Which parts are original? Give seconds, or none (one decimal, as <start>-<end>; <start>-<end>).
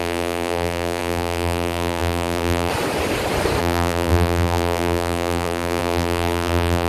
2.7-3.6